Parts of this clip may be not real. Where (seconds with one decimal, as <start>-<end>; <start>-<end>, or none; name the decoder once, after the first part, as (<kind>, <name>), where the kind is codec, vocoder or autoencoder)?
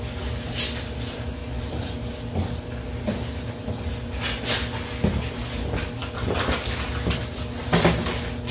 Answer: none